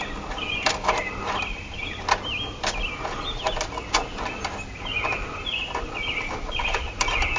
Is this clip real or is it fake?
real